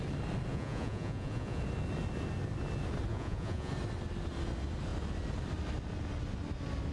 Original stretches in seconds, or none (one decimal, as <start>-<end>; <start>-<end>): 0.0-0.5; 1.6-3.1; 3.7-6.9